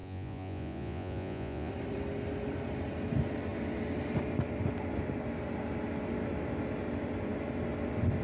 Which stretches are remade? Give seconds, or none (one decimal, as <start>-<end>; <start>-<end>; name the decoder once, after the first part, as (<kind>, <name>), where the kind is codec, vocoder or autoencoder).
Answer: 0.0-1.7 (vocoder, Vocos)